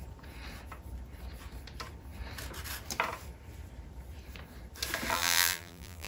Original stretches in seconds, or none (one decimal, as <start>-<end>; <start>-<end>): 0.0-5.1